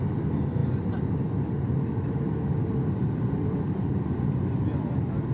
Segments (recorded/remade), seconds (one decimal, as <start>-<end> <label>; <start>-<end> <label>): 0.0-5.3 recorded